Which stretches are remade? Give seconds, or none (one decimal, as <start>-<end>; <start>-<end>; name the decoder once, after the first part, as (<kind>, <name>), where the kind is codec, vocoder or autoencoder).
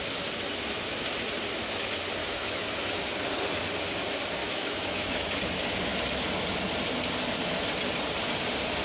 2.2-3.0 (autoencoder, DAC-VAE); 4.4-5.4